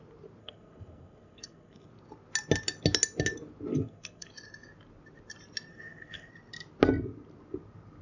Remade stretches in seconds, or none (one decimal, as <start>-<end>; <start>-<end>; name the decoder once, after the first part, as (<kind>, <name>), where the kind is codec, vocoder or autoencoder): 0.4-1.9 (codec, SNAC); 3.7-4.3; 5.7-6.3